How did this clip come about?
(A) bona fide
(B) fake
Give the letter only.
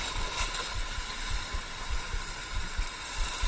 A